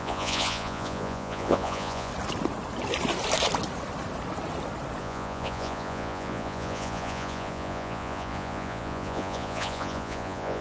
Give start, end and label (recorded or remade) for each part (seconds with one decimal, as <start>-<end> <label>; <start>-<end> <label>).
0.0-2.1 remade; 2.1-5.0 recorded; 5.0-10.6 remade